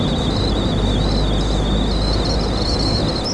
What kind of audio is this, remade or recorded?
recorded